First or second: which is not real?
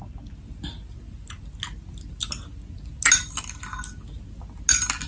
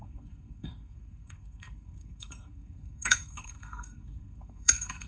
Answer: second